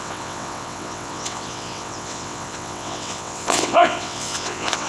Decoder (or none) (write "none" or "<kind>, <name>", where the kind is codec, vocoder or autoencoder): vocoder, WaveNeXt